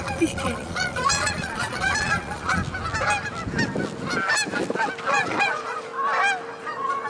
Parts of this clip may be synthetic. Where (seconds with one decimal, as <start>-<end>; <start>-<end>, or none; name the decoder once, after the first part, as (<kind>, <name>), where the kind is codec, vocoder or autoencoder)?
0.0-2.6 (vocoder, Vocos); 5.1-5.9; 6.6-7.1